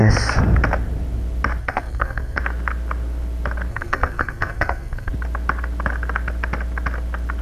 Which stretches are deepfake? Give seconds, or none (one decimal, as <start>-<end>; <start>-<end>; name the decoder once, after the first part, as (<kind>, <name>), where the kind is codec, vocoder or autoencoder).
1.6-2.4 (codec, SNAC); 3.7-5.1